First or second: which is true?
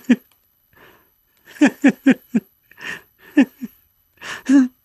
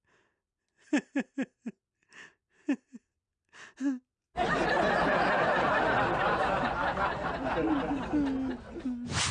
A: second